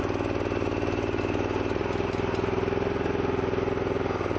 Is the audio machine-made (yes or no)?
no